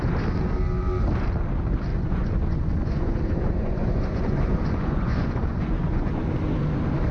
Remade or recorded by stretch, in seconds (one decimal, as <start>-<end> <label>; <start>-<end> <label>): 0.0-1.9 recorded; 1.9-6.2 remade; 6.2-7.1 recorded